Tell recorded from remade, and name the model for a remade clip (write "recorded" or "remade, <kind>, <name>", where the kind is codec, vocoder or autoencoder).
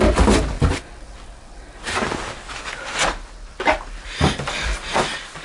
recorded